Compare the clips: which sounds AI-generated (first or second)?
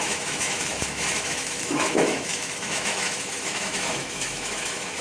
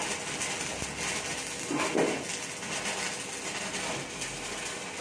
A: first